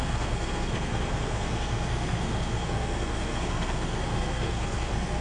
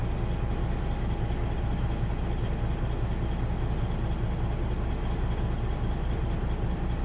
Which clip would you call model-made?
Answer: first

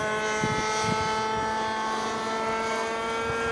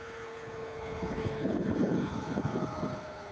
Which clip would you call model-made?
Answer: second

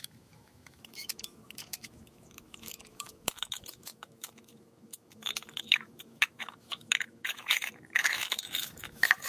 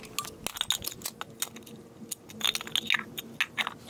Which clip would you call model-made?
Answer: first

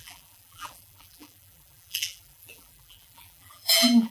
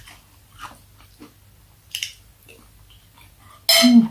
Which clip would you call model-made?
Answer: first